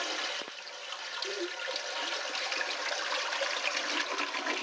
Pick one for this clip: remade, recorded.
recorded